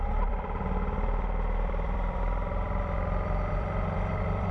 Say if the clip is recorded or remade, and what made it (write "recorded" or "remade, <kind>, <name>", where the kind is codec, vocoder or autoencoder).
remade, vocoder, BigVGAN v2